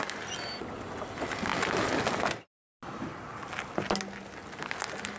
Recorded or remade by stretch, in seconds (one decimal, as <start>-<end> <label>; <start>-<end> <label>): 0.0-5.2 recorded

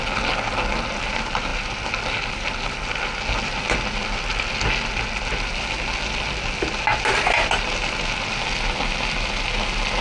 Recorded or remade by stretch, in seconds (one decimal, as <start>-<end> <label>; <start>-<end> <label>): 0.0-10.0 recorded

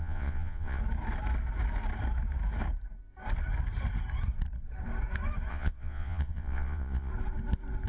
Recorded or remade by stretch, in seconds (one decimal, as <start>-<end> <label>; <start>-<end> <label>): 0.0-0.8 remade; 0.8-5.5 recorded; 5.5-7.1 remade; 7.1-7.9 recorded

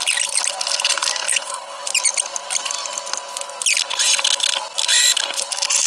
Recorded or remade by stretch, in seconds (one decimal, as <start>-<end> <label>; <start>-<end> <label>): 0.0-1.3 recorded; 1.3-1.8 remade; 1.8-5.9 recorded

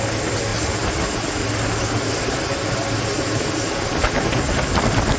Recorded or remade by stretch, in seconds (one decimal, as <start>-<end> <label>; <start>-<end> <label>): 0.0-5.2 recorded